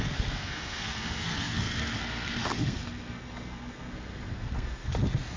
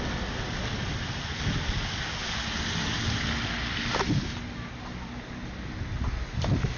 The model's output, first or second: first